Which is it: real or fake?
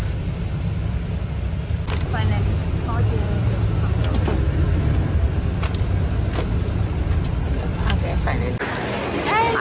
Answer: real